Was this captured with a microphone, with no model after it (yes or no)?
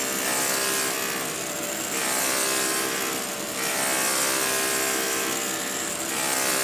yes